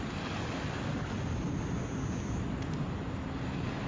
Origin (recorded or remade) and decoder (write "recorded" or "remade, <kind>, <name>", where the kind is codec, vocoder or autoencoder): recorded